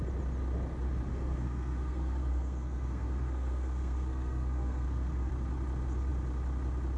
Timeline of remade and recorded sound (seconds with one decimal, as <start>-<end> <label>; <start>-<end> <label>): 0.0-1.1 recorded; 1.1-5.3 remade; 5.3-7.0 recorded